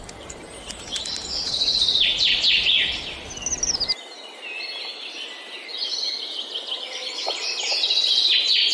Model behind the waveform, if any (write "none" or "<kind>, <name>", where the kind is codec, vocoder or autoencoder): none